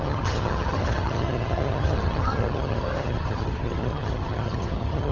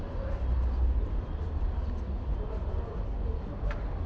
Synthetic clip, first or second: first